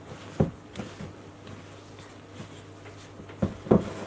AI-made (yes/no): no